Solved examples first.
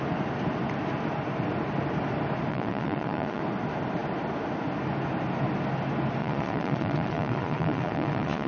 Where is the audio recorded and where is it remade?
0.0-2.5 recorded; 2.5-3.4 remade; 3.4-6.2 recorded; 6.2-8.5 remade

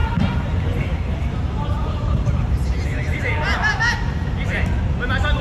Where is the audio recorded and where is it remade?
0.0-3.2 remade; 3.2-5.4 recorded

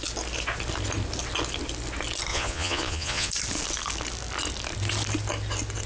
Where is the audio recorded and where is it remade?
0.0-2.3 recorded; 2.3-3.3 remade; 3.3-5.9 recorded

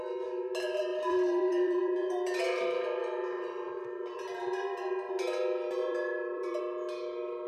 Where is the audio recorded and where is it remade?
0.0-0.9 recorded; 0.9-5.1 remade; 5.1-5.8 recorded; 5.8-6.6 remade; 6.6-7.5 recorded

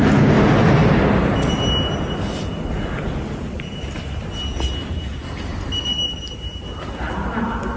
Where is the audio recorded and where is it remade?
0.0-7.8 recorded

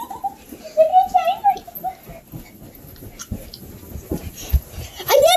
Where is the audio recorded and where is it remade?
0.0-0.9 remade; 0.9-4.1 recorded; 4.1-5.4 remade

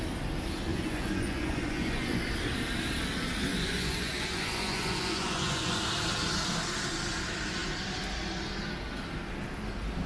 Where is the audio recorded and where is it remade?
0.0-0.7 recorded; 0.7-2.2 remade; 2.2-3.5 recorded; 3.5-5.8 remade; 5.8-10.1 recorded